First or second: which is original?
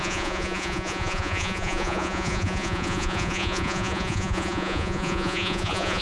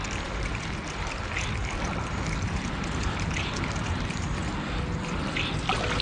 second